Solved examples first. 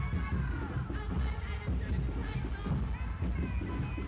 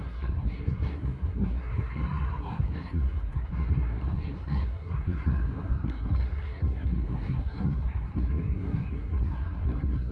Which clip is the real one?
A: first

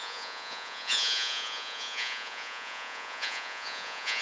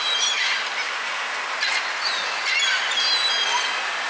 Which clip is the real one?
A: second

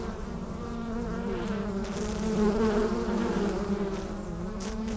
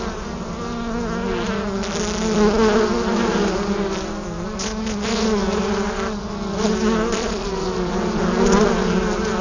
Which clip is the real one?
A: second